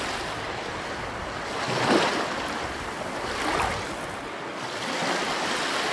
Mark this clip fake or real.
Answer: real